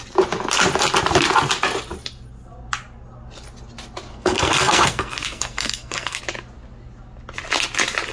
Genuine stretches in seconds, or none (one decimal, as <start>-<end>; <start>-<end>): 0.0-4.1; 6.2-8.1